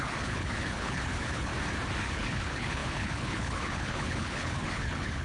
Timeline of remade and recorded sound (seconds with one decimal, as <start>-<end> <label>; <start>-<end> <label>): 0.0-1.5 remade; 1.5-2.0 recorded; 2.0-5.2 remade